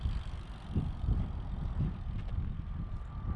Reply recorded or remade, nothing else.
recorded